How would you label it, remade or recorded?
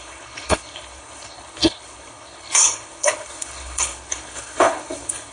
remade